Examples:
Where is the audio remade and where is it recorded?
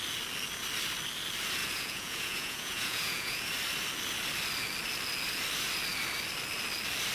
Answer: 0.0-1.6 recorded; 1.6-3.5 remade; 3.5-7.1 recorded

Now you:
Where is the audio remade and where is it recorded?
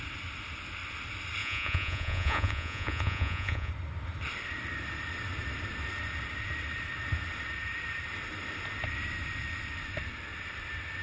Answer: 0.0-1.4 recorded; 1.4-3.7 remade; 3.7-11.0 recorded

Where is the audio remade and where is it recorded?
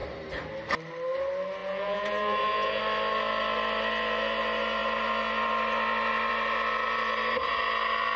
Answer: 0.0-1.6 recorded; 1.6-2.8 remade; 2.8-8.2 recorded